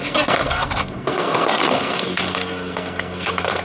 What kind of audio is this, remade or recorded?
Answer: remade